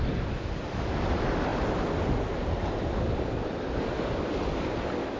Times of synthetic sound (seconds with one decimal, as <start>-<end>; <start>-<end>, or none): none